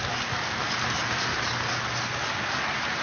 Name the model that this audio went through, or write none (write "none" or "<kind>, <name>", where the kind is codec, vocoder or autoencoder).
none